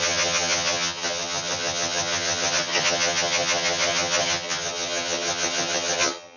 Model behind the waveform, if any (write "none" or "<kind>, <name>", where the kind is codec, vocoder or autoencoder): vocoder, HiFi-GAN